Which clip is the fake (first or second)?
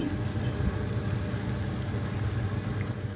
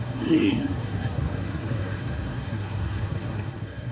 second